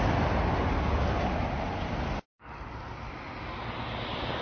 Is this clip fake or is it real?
real